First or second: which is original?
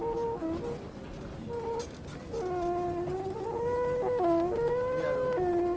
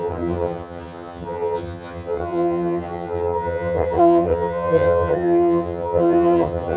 first